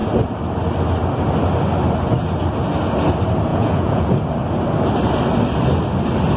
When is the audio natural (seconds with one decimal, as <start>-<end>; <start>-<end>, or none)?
0.0-3.5; 4.1-6.4